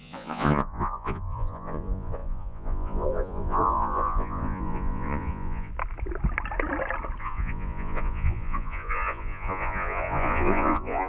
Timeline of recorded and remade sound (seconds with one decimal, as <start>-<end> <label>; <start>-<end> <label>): 0.0-5.7 remade; 5.7-7.2 recorded; 7.2-11.1 remade